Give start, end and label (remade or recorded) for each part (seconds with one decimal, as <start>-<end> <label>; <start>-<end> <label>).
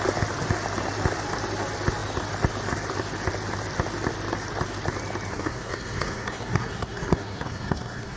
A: 0.0-5.3 recorded; 5.3-8.2 remade